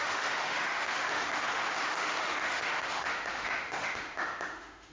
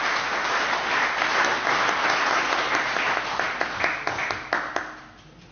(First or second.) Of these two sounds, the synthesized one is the first